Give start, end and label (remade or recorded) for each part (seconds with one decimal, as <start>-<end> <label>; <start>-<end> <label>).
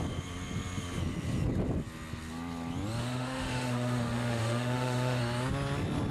0.0-3.0 recorded; 3.0-5.2 remade; 5.2-6.1 recorded